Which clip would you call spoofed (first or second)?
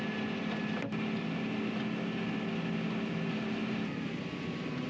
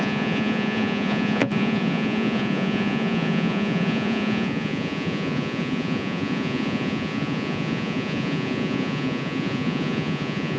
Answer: second